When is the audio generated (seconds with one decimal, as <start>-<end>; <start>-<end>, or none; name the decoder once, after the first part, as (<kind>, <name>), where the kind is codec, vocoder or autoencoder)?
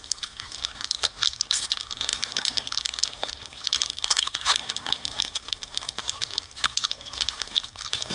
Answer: 0.0-8.1 (codec, SNAC)